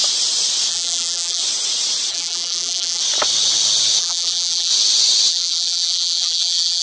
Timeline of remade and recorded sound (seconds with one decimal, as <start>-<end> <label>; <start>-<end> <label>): 0.0-0.7 recorded; 0.7-1.4 remade; 1.4-2.1 recorded; 2.1-3.0 remade; 3.0-4.0 recorded; 4.0-4.7 remade; 4.7-5.3 recorded; 5.3-6.8 remade

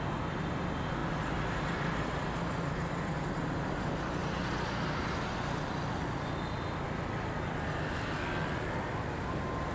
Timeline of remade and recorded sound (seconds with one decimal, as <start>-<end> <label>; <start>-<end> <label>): 0.0-9.7 recorded

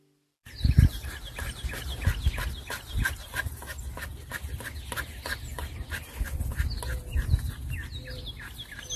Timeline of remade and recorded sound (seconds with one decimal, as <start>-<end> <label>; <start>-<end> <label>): 0.0-9.0 recorded